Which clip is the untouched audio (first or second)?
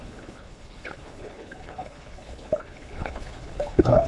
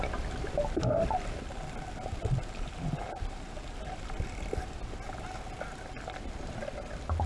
second